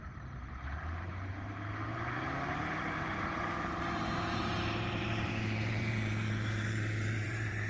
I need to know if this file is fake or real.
fake